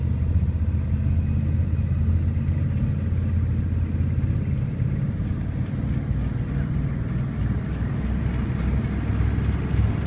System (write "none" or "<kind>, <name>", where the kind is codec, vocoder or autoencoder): none